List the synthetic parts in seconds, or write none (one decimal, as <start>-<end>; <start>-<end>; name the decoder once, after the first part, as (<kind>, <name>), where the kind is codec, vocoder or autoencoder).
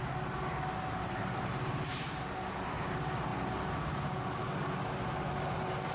1.9-2.5 (vocoder, BigVGAN v2)